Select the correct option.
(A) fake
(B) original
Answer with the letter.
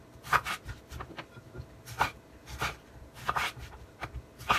A